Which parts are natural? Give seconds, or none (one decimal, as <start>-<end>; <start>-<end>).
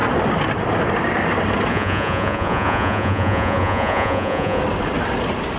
0.0-1.7; 4.6-5.6